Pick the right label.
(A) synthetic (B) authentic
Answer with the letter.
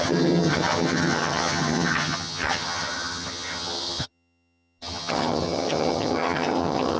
A